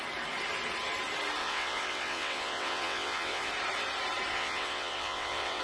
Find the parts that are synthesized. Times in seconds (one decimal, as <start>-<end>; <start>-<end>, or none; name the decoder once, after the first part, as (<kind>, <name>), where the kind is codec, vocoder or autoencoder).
1.4-3.5 (vocoder, WaveNeXt); 4.3-5.6